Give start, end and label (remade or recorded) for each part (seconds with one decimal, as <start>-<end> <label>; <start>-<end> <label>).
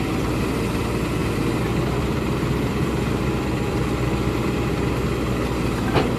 0.0-1.2 recorded; 1.2-4.9 remade; 4.9-6.2 recorded